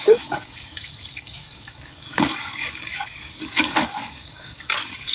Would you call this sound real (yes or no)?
no